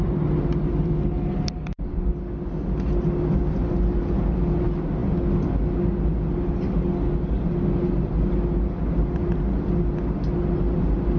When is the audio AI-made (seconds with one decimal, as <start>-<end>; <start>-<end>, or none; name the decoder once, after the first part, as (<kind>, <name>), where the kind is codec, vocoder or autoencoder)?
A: none